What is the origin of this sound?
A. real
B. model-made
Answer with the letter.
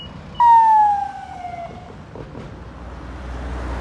A